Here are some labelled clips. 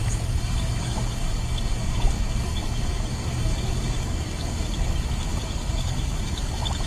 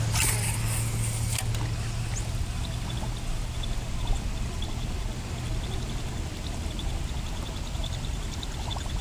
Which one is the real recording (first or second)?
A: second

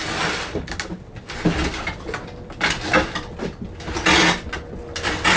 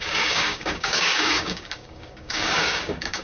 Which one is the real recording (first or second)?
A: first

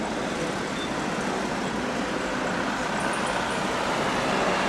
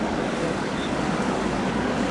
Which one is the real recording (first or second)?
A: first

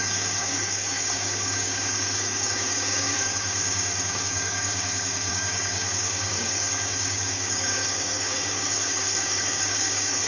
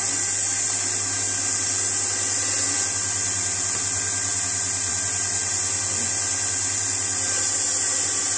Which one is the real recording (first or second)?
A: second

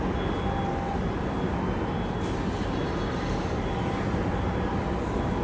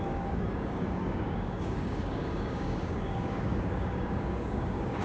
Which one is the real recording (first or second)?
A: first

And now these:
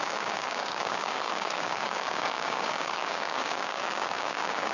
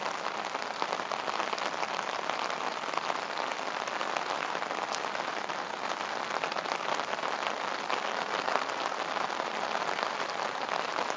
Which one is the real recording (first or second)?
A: second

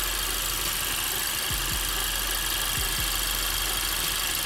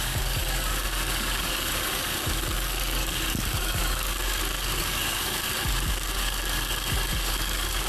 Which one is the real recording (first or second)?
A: first